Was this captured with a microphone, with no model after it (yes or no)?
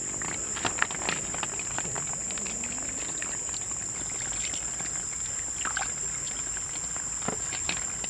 yes